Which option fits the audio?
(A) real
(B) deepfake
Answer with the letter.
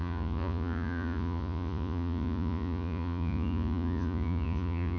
B